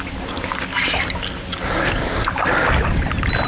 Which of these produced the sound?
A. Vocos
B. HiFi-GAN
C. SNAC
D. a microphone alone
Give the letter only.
D